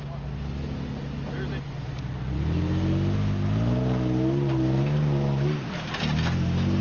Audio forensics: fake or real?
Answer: real